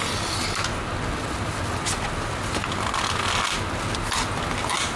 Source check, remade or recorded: recorded